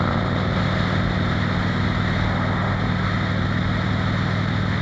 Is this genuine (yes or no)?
yes